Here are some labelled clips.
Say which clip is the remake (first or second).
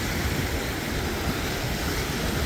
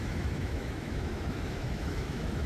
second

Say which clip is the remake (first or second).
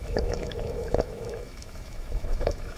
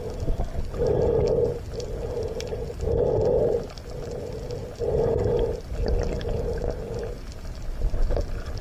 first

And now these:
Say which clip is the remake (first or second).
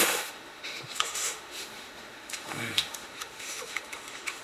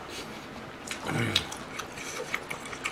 first